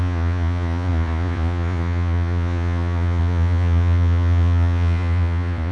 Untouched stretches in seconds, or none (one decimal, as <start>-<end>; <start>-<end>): none